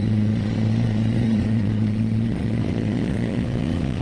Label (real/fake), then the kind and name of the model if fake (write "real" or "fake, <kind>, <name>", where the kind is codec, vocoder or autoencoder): fake, vocoder, Vocos